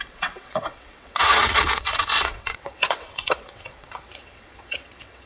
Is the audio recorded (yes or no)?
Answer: no